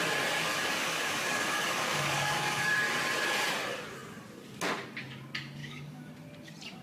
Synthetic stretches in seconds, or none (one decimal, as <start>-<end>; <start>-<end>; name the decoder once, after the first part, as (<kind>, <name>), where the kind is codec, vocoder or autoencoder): 0.5-2.7 (codec, DAC); 5.6-6.1